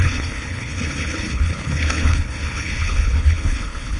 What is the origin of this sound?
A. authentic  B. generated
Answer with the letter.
B